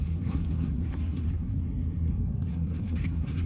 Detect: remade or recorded remade